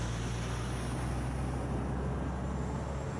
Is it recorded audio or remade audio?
recorded